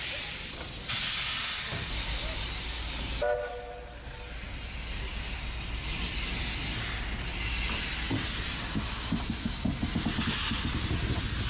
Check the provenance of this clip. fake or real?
real